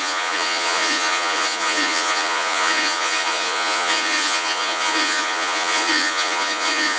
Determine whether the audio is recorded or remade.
remade